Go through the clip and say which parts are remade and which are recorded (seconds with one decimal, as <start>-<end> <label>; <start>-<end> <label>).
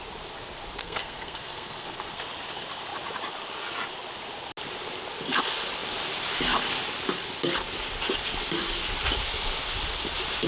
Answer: 0.0-0.8 recorded; 0.8-2.2 remade; 2.2-10.5 recorded